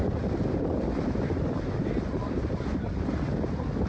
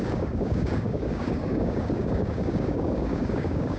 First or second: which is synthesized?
second